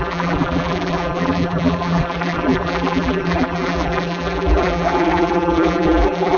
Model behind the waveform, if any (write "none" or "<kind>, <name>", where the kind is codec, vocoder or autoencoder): vocoder, BigVGAN v2